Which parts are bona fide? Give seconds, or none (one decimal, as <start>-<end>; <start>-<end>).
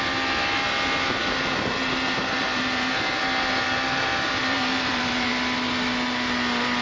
0.0-1.2; 5.3-6.8